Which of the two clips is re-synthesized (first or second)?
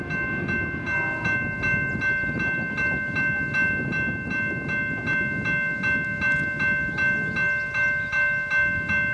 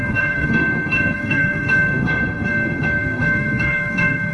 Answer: second